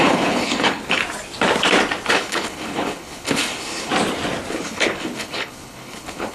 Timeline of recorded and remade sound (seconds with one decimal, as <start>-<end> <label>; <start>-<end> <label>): 0.0-1.0 remade; 1.0-2.1 recorded; 2.1-3.9 remade; 3.9-4.5 recorded; 4.5-6.3 remade